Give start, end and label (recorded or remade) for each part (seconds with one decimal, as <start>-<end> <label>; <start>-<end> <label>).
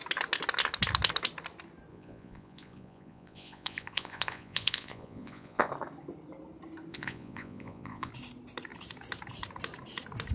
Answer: 0.0-1.9 recorded; 1.9-5.7 remade; 5.7-6.9 recorded; 6.9-8.1 remade; 8.1-10.3 recorded